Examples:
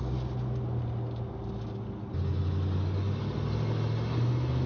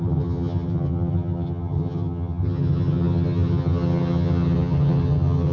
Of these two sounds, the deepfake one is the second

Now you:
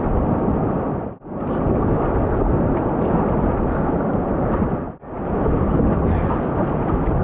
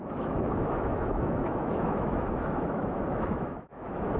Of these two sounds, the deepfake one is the second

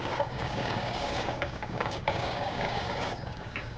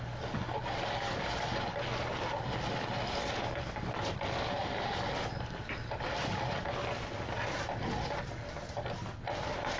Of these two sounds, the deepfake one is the first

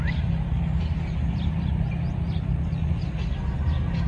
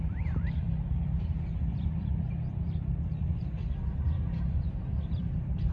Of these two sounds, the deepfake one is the second